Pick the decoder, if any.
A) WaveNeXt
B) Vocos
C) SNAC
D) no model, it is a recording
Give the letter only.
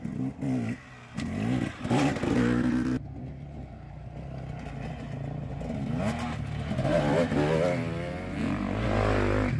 D